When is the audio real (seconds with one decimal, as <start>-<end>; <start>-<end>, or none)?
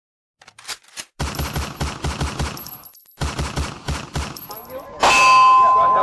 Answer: 0.0-6.0